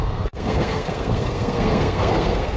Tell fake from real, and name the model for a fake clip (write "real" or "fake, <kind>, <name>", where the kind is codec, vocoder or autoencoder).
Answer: fake, codec, SNAC